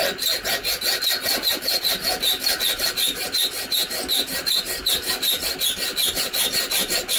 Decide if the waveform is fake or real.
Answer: real